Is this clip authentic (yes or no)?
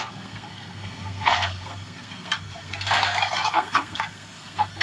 no